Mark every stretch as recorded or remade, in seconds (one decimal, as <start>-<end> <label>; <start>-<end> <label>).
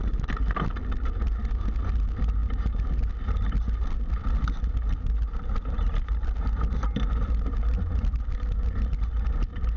0.0-9.8 recorded